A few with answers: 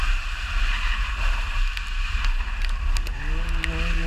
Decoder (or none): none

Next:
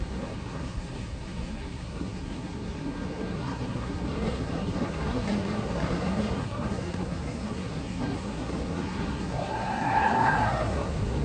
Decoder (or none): codec, SNAC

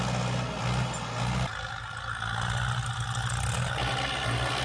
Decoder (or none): none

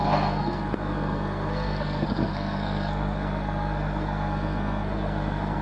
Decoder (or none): codec, SNAC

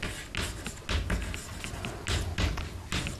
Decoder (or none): none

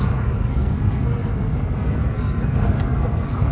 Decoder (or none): codec, SNAC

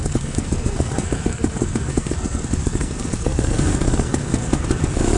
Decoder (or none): codec, SNAC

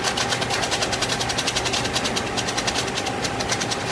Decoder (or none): none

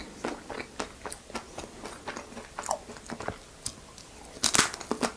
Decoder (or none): none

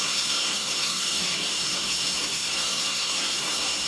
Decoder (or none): codec, SNAC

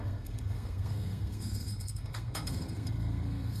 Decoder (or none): codec, SNAC